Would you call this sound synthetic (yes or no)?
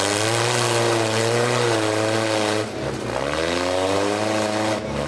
no